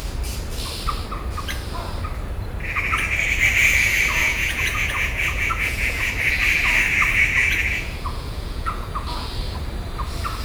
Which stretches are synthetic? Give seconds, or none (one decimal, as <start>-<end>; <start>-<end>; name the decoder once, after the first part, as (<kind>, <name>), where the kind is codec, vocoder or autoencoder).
4.2-6.1 (vocoder, Vocos); 7.4-9.3